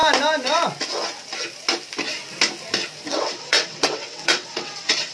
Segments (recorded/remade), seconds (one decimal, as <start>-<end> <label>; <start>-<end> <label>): 0.0-3.1 recorded; 3.1-5.1 remade